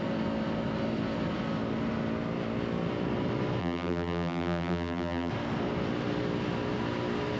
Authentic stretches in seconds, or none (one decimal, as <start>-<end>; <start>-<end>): 0.0-3.6; 5.3-7.4